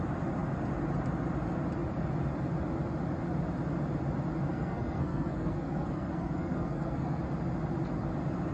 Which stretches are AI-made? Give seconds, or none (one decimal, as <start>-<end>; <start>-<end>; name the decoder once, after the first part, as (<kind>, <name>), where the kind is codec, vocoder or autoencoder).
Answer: 4.5-7.2 (codec, SNAC)